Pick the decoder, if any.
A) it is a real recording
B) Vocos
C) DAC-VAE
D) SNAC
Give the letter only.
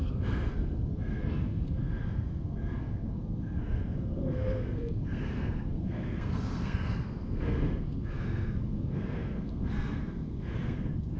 D